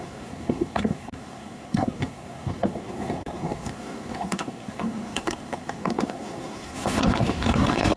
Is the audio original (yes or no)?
no